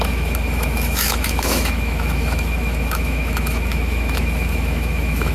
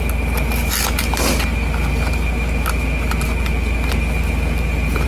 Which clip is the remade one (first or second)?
first